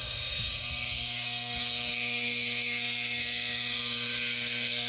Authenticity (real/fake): fake